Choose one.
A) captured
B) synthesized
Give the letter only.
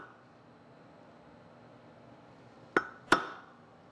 A